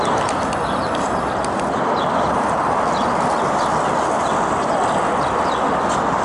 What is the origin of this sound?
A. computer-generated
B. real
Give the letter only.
B